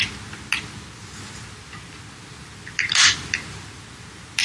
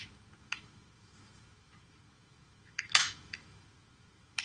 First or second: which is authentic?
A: first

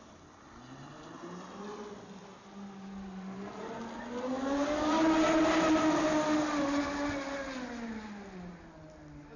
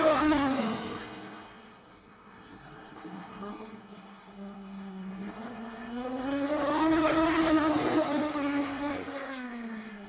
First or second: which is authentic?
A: first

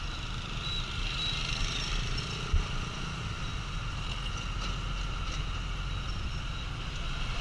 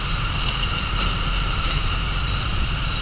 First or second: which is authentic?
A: first